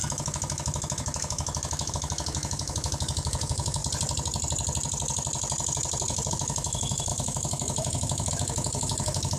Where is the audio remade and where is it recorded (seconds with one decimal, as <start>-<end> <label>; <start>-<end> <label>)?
0.0-3.8 remade; 3.8-6.3 recorded; 6.3-9.4 remade